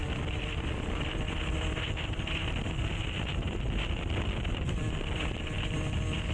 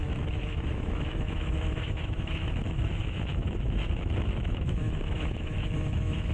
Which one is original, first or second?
first